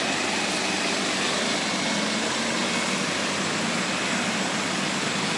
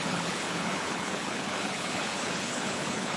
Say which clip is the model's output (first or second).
second